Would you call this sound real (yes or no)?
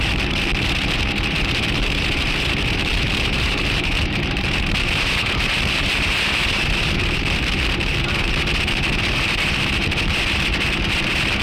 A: no